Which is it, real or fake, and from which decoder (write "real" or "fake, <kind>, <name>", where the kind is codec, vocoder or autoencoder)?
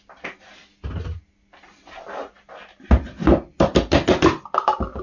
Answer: real